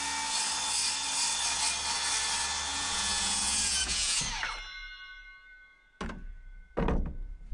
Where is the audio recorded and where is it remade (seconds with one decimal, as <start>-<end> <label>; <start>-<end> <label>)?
0.0-2.7 recorded; 2.7-4.2 remade; 4.2-7.5 recorded